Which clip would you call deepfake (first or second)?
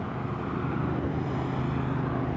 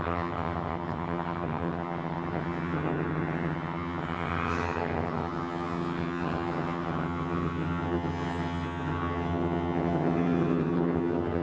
second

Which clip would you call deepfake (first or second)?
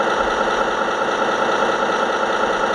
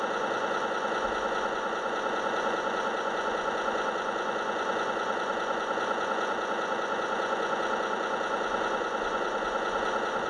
second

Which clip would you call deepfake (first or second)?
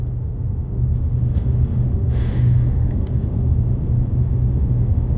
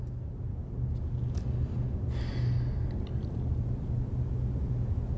first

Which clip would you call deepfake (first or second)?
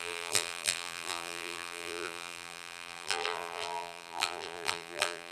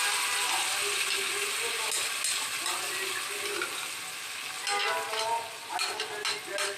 first